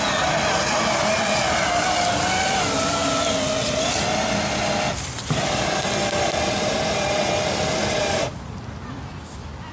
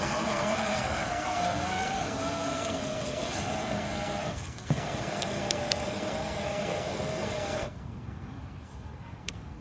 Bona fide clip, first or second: first